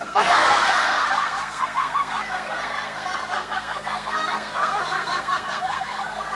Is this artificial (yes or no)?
yes